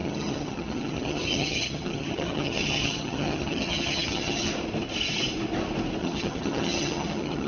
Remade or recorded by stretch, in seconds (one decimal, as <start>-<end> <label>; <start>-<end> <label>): 0.0-4.5 remade; 4.5-6.0 recorded; 6.0-7.5 remade